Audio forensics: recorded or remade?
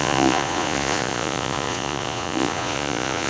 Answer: remade